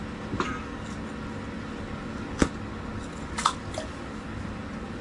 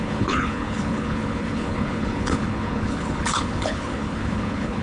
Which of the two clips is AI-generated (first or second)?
second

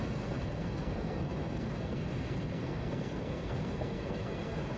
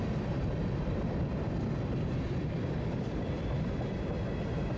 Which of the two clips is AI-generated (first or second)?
first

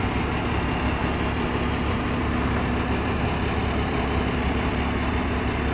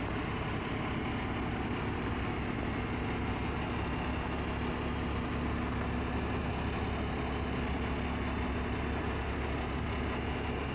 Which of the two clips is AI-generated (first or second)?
first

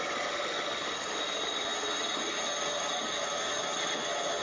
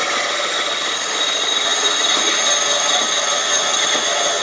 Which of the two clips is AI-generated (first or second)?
second